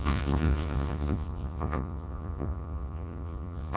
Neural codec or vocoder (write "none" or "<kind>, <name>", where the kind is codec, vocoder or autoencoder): vocoder, Vocos